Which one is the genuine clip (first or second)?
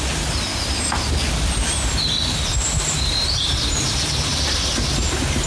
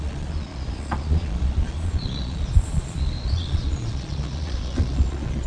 first